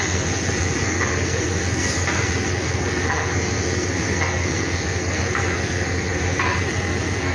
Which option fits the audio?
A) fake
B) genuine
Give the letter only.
A